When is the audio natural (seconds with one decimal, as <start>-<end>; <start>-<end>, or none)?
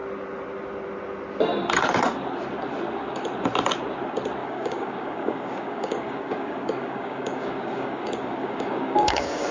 0.0-4.4